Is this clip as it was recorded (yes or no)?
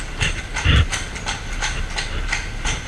yes